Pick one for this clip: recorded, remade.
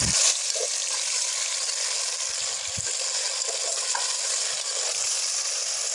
recorded